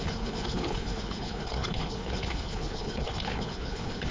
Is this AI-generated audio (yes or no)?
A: yes